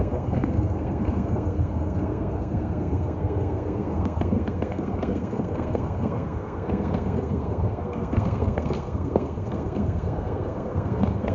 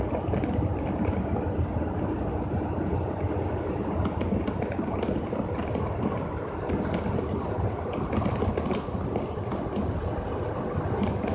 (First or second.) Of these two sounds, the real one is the second